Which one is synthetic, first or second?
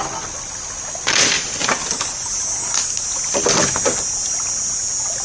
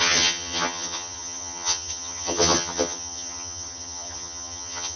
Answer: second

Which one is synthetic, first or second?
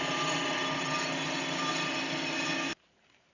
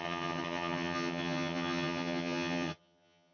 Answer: second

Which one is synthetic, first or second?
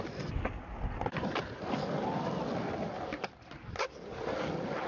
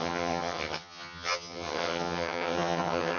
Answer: second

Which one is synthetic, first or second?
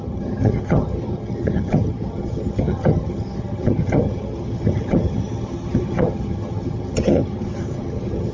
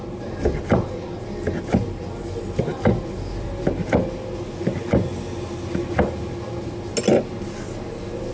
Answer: first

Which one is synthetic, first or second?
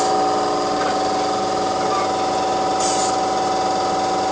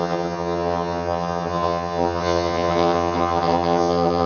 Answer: second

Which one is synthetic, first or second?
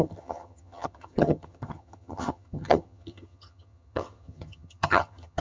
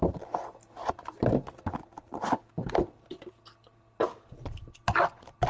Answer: first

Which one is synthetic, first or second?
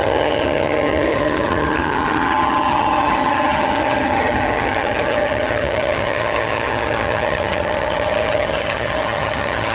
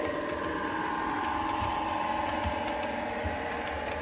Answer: first